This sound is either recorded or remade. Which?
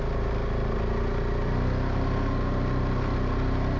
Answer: recorded